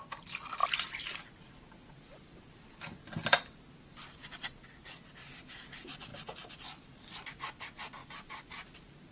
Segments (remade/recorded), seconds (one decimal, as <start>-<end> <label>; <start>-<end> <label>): 0.0-0.6 recorded; 0.6-2.9 remade; 2.9-6.1 recorded; 6.1-6.9 remade; 6.9-8.0 recorded; 8.0-9.1 remade